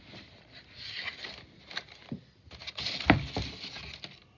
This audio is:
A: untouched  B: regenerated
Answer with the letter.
A